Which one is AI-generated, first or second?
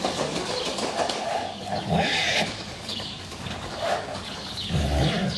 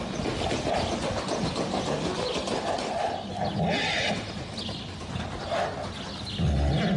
first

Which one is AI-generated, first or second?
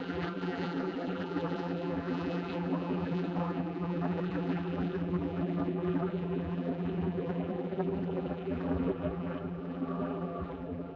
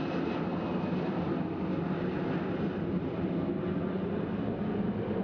first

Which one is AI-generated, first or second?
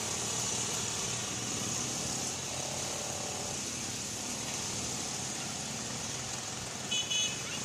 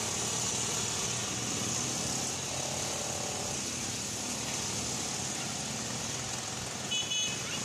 first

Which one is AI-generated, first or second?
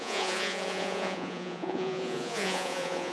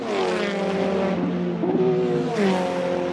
first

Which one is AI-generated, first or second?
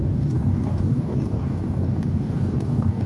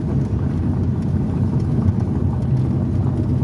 first